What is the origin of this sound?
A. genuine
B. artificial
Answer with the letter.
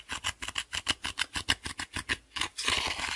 A